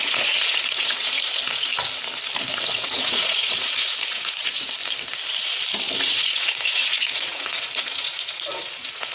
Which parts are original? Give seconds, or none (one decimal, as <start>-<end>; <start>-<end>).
1.7-2.7; 4.8-6.0

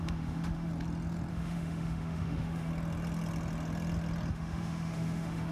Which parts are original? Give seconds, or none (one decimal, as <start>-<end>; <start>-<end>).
0.7-1.3; 2.7-4.3

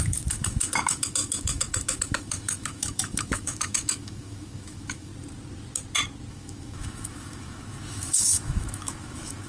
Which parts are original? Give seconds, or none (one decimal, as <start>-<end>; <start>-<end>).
5.1-6.3

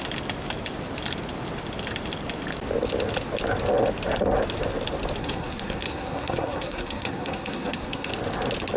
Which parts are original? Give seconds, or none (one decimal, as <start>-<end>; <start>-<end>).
0.0-5.2; 8.1-8.8